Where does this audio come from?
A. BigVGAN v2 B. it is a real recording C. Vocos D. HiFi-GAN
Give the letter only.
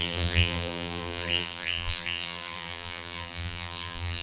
A